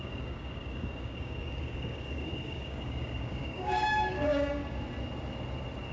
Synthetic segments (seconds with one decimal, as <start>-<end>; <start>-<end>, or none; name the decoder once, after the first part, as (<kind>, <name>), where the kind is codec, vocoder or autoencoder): 0.0-4.6 (codec, DAC)